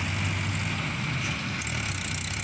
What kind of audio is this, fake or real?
real